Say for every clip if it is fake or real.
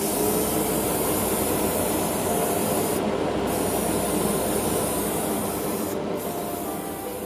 real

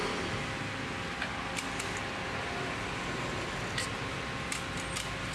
real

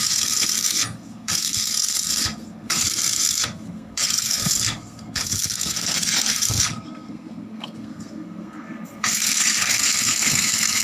fake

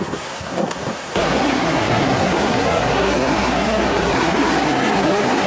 fake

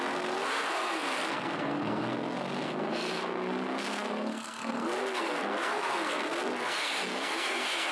fake